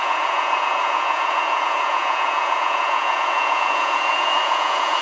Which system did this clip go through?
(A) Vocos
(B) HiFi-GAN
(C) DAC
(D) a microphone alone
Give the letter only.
A